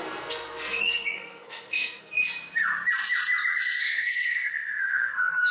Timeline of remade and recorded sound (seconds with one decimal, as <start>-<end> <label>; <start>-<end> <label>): 0.0-2.3 remade; 2.3-3.8 recorded; 3.8-5.5 remade

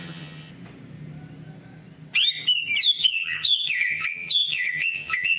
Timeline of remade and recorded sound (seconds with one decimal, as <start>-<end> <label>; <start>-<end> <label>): 0.0-0.5 remade; 0.5-3.0 recorded; 3.0-5.4 remade

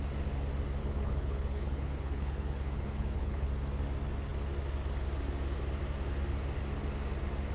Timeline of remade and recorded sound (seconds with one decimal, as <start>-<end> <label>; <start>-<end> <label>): 0.0-0.8 recorded; 0.8-3.5 remade; 3.5-7.5 recorded

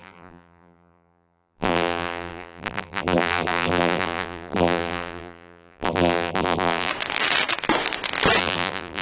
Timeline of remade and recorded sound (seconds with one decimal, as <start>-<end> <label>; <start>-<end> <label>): 0.0-6.9 remade; 6.9-8.4 recorded; 8.4-9.0 remade